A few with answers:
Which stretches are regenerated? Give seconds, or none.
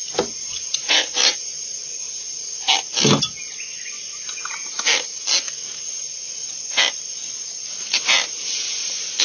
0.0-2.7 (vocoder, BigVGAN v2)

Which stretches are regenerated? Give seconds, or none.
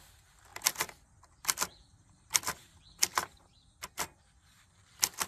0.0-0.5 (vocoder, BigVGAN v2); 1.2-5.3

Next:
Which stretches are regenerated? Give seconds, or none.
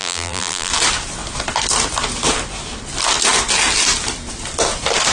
0.0-0.7 (vocoder, BigVGAN v2)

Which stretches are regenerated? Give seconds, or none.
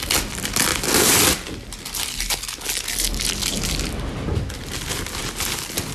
none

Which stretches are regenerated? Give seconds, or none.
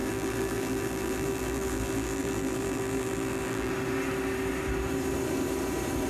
0.0-3.7 (vocoder, BigVGAN v2)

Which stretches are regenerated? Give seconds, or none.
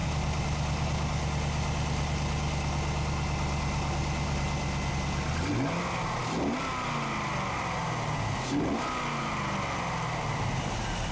none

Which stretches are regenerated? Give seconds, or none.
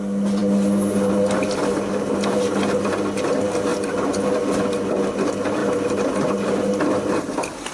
none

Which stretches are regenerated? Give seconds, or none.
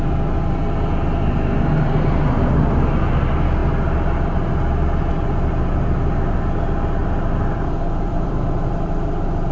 7.0-9.5 (vocoder, BigVGAN v2)